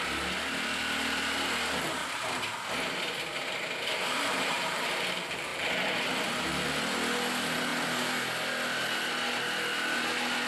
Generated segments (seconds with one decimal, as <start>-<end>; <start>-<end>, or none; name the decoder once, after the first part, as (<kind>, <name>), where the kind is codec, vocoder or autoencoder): 2.0-5.0 (vocoder, BigVGAN v2)